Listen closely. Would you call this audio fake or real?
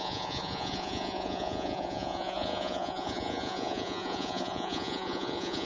fake